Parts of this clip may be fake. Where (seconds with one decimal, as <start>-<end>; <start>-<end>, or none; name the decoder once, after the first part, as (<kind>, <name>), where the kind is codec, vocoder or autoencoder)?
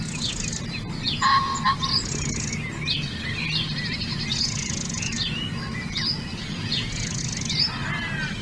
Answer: 4.1-7.2 (vocoder, Vocos)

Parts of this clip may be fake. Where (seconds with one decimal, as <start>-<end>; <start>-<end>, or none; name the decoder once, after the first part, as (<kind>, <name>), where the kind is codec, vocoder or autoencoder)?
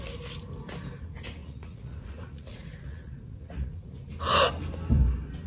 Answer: 1.4-4.0 (vocoder, Vocos)